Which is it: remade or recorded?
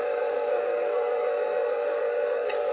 remade